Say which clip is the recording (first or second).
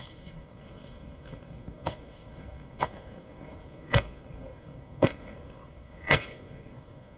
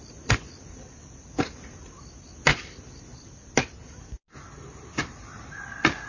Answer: second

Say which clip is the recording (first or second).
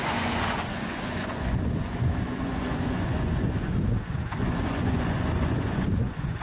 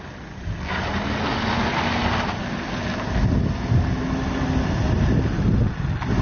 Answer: second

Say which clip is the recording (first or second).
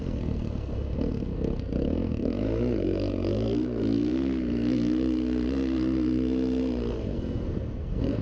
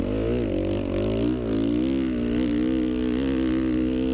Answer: second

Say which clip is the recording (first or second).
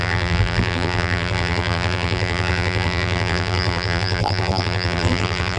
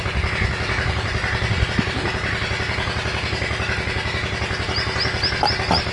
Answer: second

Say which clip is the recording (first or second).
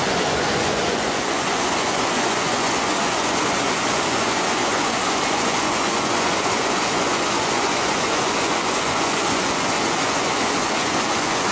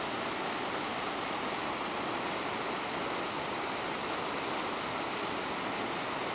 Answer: second